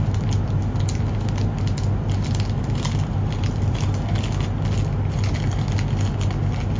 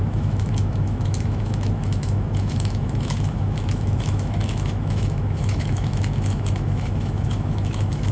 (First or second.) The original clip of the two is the first